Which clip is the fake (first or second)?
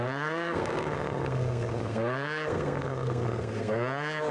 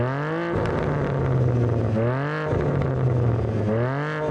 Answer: first